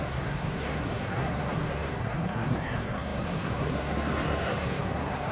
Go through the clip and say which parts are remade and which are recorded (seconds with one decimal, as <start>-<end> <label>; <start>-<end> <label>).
0.0-5.3 remade